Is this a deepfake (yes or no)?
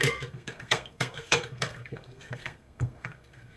yes